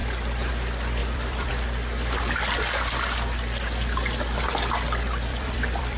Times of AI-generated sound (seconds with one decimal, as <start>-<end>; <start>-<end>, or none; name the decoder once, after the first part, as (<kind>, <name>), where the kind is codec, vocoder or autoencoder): 1.0-1.5 (vocoder, BigVGAN v2); 5.3-6.0